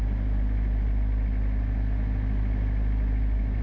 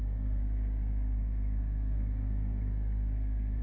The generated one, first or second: second